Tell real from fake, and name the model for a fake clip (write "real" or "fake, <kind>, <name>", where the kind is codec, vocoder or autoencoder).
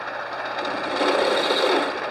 real